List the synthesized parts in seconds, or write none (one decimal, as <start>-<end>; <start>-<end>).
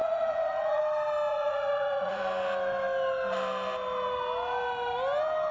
0.0-0.8; 1.3-2.2